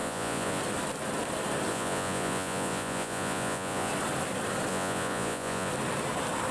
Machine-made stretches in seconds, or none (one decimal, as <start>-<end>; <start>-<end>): 0.0-0.6; 1.7-3.9; 4.7-5.7